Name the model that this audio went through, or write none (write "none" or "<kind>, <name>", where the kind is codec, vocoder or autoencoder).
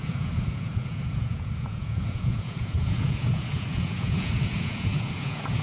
vocoder, Vocos